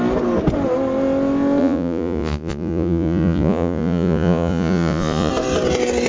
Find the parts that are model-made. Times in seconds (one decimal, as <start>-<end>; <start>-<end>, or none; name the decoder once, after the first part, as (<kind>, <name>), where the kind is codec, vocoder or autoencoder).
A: 1.6-5.3 (vocoder, Vocos)